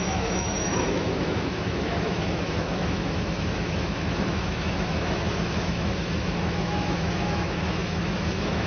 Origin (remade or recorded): remade